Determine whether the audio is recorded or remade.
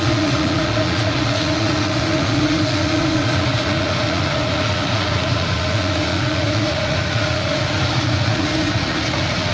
remade